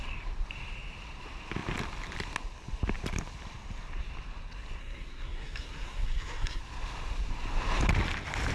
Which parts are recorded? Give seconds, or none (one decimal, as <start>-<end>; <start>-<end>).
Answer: 0.0-4.8; 6.6-8.5